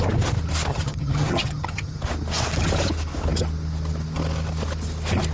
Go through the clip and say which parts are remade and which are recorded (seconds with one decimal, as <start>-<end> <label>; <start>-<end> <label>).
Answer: 0.0-0.7 recorded; 0.7-2.0 remade; 2.0-5.3 recorded